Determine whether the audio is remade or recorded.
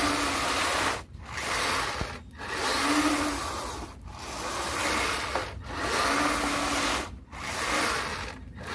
recorded